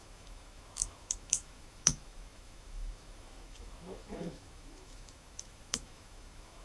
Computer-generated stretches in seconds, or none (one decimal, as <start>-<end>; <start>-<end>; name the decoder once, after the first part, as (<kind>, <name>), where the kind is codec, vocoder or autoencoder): 0.0-6.6 (autoencoder, DAC-VAE)